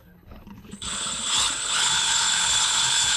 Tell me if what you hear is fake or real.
fake